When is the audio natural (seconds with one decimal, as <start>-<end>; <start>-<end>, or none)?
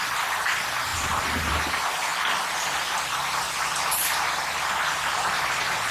0.0-5.9